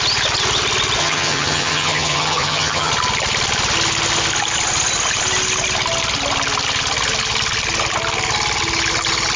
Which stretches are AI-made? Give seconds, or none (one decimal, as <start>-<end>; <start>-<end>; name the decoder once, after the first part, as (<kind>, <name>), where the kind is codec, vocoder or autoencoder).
1.0-2.9 (vocoder, HiFi-GAN)